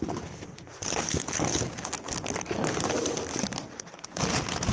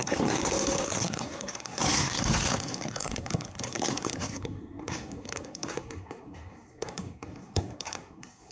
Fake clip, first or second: second